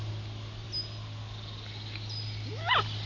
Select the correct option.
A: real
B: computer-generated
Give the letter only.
A